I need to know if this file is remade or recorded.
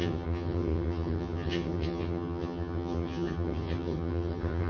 remade